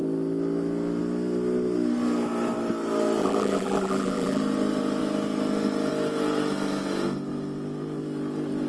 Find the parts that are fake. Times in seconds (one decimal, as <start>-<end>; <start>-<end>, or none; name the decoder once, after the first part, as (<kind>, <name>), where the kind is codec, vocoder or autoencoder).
3.2-4.4 (vocoder, BigVGAN v2)